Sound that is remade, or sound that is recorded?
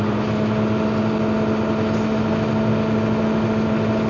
recorded